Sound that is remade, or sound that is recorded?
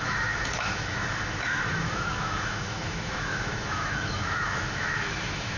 remade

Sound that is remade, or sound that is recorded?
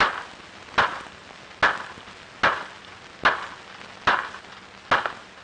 recorded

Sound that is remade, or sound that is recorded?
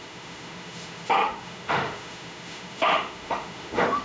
remade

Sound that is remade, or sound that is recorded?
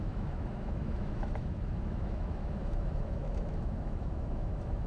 remade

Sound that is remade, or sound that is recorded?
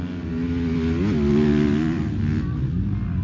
recorded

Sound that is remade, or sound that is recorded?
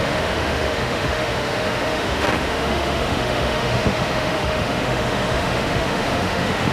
remade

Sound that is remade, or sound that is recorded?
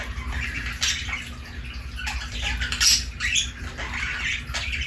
recorded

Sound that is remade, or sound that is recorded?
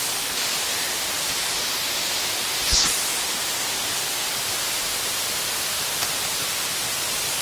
recorded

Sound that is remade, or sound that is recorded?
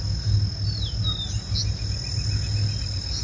recorded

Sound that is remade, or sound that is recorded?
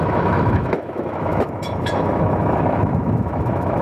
remade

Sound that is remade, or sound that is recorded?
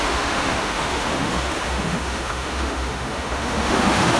remade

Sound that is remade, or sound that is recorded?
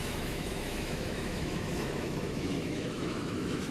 remade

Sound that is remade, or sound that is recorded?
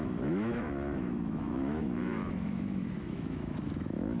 remade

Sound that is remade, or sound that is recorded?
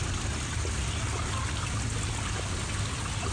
recorded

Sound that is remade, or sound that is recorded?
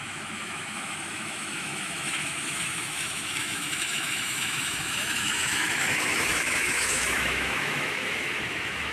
remade